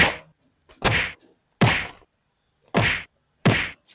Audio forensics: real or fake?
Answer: real